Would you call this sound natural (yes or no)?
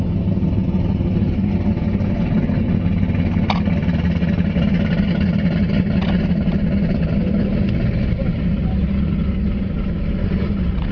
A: yes